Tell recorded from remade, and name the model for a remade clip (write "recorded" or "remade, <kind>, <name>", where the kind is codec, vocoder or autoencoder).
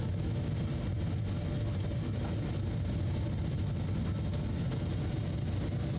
recorded